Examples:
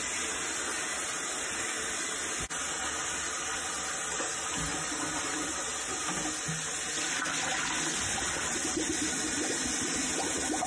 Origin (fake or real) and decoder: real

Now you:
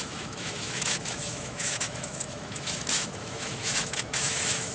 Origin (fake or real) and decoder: fake, autoencoder, DAC-VAE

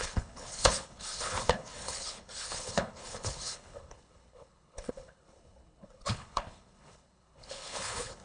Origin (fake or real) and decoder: fake, codec, HILCodec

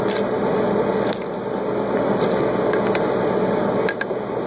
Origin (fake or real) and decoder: real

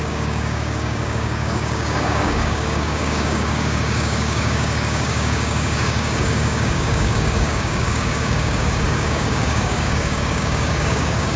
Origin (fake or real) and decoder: fake, codec, DAC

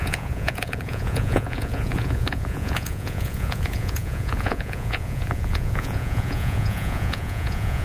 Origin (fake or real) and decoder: fake, vocoder, Vocos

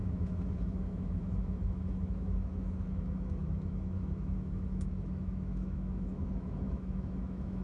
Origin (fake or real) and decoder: fake, autoencoder, DAC-VAE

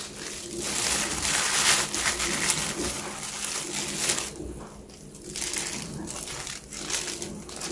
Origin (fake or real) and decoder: real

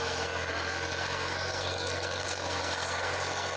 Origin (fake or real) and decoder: fake, codec, SNAC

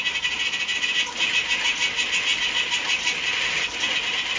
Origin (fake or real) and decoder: real